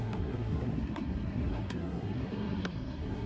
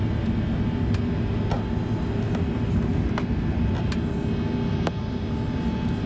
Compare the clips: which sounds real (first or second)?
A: second